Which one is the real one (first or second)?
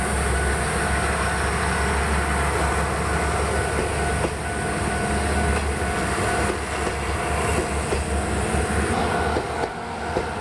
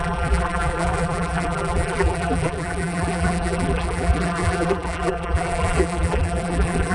first